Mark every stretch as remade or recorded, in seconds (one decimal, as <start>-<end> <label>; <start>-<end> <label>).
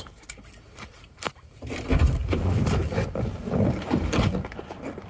0.0-2.8 remade; 2.8-5.1 recorded